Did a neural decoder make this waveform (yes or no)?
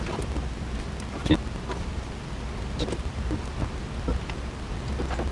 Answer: no